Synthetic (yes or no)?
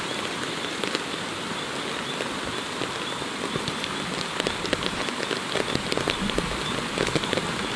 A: no